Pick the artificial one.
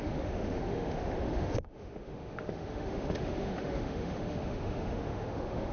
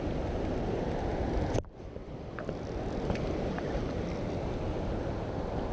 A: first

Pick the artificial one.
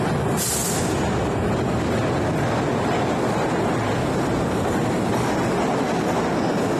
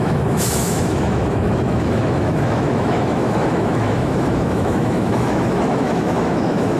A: second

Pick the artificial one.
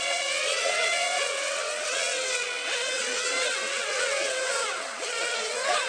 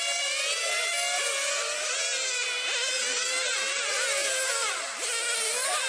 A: first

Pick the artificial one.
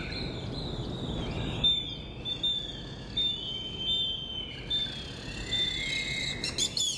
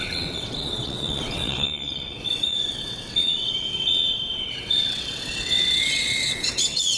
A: second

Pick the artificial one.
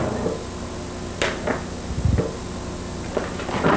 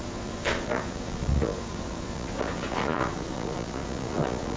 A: second